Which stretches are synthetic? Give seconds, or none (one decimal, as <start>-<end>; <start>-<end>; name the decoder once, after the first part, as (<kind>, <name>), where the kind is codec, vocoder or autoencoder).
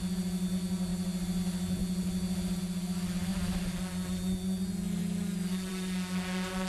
3.3-3.8 (vocoder, BigVGAN v2)